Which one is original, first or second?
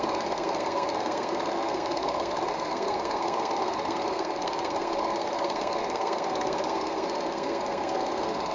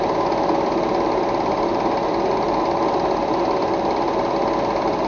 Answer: second